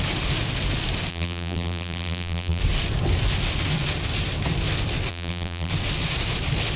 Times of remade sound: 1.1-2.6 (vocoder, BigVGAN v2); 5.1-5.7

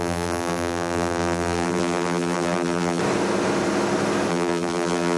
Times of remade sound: 0.0-3.0 (vocoder, BigVGAN v2); 4.3-5.2

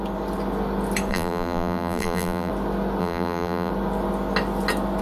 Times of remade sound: 1.1-2.5 (vocoder, BigVGAN v2); 3.0-3.7